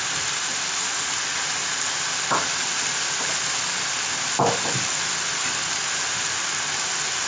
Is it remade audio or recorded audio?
recorded